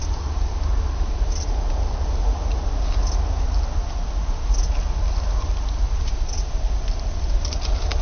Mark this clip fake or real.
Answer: real